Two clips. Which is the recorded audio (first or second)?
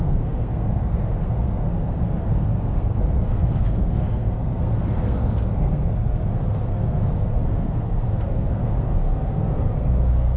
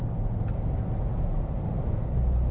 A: second